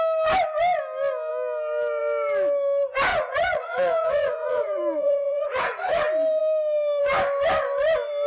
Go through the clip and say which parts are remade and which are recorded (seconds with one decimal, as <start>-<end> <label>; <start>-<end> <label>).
0.0-3.1 recorded; 3.1-6.0 remade; 6.0-8.3 recorded